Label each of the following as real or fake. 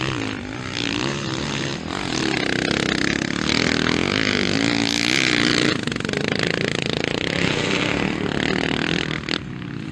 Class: real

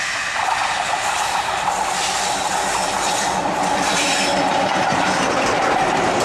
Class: fake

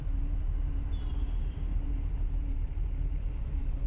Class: fake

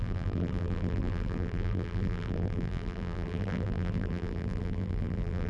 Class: fake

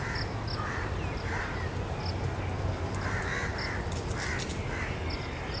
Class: real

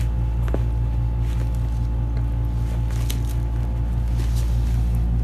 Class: real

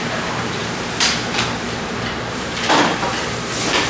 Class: fake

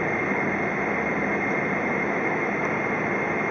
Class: real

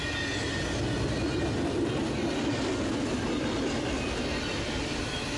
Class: real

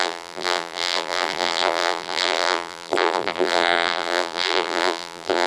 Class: fake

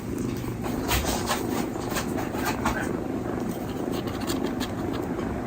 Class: fake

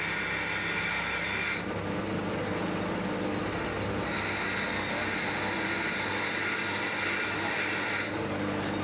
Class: real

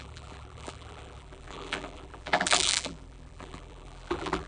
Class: fake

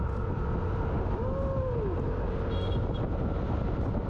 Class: real